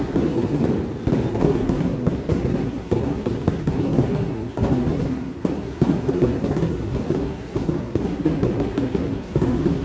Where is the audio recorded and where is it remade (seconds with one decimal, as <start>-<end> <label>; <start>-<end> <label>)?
0.0-0.6 remade; 0.6-1.3 recorded; 1.3-9.8 remade